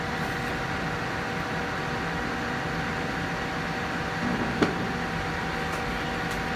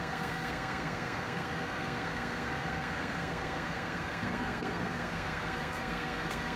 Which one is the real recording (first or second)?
first